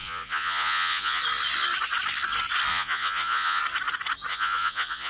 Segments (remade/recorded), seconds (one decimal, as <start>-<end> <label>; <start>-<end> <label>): 0.0-1.2 remade; 1.2-2.7 recorded; 2.7-3.6 remade; 3.6-4.3 recorded; 4.3-5.1 remade